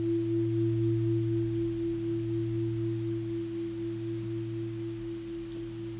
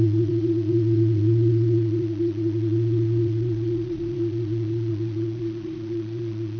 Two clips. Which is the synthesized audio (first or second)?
second